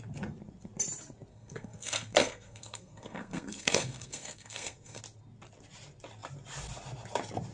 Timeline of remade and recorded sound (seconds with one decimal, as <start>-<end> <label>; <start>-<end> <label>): 0.0-1.3 recorded; 1.3-5.0 remade; 5.0-7.5 recorded